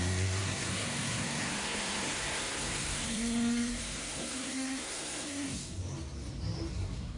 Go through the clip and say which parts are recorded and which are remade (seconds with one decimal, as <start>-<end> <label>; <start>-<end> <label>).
0.0-5.8 remade; 5.8-6.7 recorded; 6.7-7.2 remade